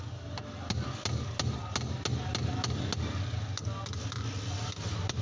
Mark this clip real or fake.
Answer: real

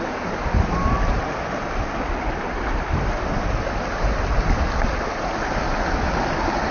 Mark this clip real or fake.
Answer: real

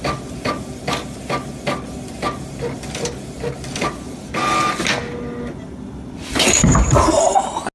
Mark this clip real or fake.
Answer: real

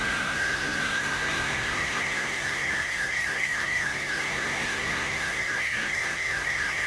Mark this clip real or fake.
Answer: fake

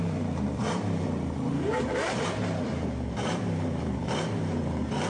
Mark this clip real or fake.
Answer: fake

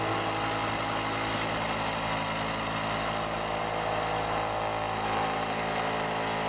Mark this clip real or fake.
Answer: real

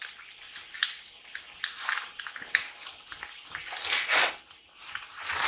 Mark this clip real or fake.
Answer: real